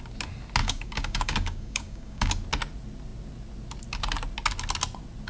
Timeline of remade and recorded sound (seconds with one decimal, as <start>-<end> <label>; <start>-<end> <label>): 0.0-0.6 recorded; 0.6-2.3 remade; 2.3-5.3 recorded